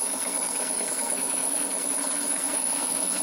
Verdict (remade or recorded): remade